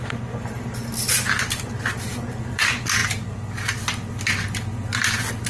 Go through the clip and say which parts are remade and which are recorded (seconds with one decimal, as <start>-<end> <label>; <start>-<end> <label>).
0.0-5.5 recorded